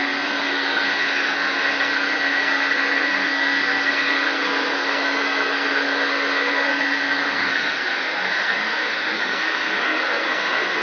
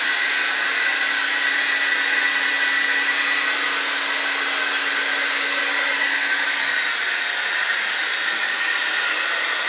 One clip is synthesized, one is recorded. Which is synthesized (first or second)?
first